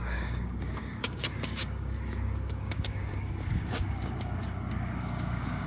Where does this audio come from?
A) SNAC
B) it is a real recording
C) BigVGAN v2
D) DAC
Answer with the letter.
D